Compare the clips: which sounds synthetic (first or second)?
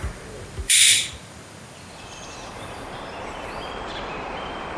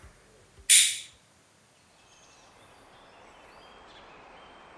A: first